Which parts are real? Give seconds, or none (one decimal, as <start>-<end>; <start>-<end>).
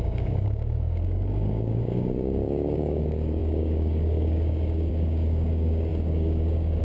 none